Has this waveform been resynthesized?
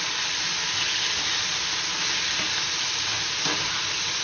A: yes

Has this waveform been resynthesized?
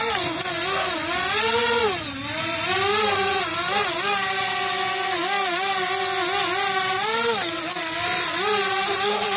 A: no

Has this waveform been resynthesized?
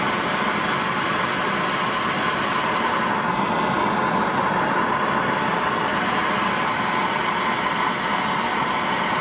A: no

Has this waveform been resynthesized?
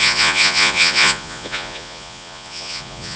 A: yes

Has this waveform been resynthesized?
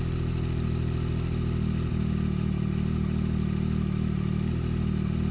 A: no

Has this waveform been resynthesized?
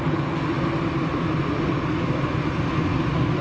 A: no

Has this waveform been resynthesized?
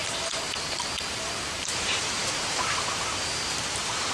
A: yes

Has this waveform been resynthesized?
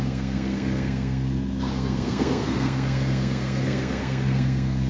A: yes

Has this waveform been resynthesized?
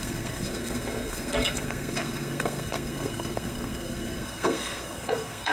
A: yes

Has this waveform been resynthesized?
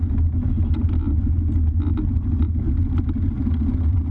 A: no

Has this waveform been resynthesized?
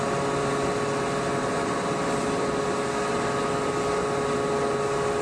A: no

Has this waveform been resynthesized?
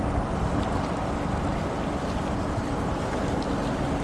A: no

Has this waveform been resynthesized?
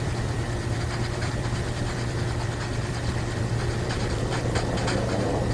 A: yes